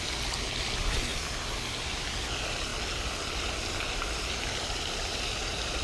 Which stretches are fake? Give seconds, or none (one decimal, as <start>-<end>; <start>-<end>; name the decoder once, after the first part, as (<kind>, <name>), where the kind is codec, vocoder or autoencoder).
none